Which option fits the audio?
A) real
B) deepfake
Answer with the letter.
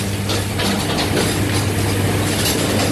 A